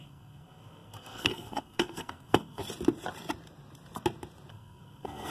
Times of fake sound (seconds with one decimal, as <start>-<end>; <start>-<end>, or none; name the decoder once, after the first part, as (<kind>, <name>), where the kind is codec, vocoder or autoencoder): 0.0-2.6 (codec, SNAC); 4.5-5.3